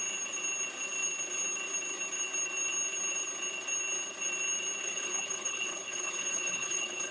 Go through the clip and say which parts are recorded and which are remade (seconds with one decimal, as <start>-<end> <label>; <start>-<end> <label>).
0.0-4.8 recorded; 4.8-7.1 remade